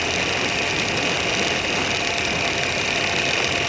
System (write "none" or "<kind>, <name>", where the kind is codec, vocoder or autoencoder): none